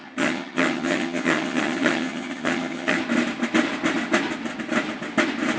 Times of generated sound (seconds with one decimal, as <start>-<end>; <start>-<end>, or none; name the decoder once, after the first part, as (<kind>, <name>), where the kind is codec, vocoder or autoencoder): 0.0-3.0 (vocoder, HiFi-GAN)